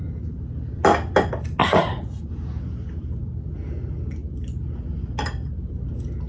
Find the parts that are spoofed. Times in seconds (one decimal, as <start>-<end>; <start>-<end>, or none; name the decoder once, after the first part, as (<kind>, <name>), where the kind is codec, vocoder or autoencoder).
1.6-2.2 (vocoder, Vocos)